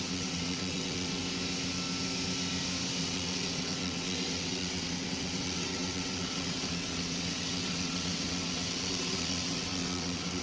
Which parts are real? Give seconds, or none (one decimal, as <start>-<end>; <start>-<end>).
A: 1.2-3.0